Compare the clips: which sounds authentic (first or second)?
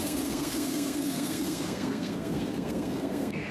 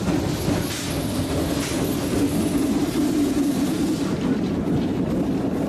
second